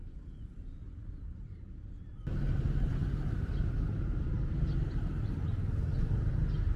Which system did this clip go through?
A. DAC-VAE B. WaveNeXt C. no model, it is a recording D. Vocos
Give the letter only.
C